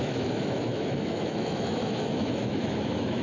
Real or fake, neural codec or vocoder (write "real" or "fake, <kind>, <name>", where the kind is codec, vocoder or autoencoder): fake, autoencoder, DAC-VAE